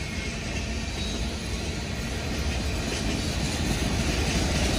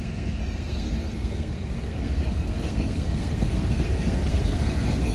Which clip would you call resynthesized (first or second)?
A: second